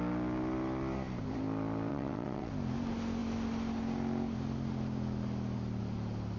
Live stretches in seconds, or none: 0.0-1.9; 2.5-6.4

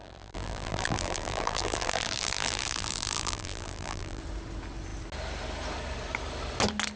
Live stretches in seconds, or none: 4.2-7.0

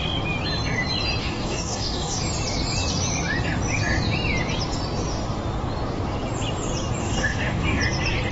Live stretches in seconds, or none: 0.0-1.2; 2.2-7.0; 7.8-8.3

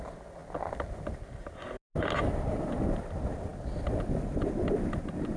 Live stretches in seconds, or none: 0.0-5.4

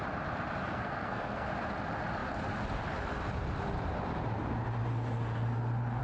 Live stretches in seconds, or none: 0.0-0.6; 1.5-6.0